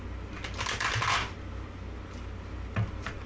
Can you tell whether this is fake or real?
real